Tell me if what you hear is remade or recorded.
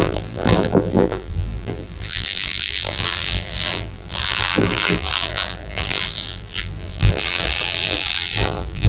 remade